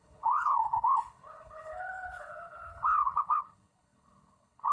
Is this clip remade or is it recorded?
remade